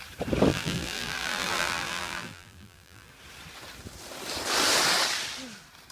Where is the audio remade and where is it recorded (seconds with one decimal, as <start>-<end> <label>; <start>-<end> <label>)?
0.0-0.5 recorded; 0.5-3.1 remade; 3.1-5.9 recorded